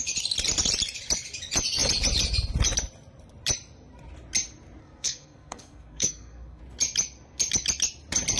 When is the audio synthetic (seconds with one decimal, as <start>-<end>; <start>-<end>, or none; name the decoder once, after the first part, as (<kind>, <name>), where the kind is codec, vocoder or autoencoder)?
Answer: 4.8-6.6 (codec, SNAC)